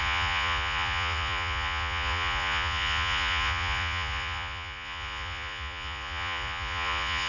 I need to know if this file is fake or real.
fake